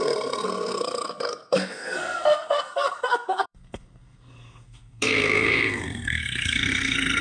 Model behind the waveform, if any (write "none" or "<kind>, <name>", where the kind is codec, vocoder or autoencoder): codec, SNAC